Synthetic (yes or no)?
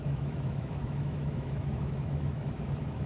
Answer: yes